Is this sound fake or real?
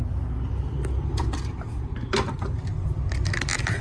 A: real